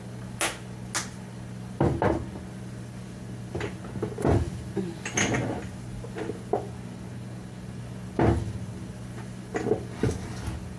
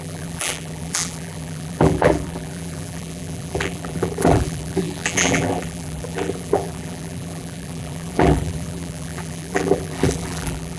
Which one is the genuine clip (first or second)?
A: first